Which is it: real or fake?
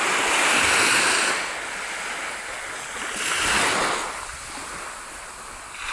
real